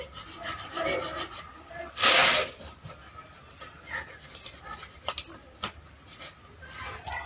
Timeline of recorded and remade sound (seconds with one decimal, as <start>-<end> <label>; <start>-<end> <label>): 0.0-7.3 recorded